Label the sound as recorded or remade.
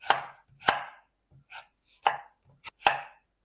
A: recorded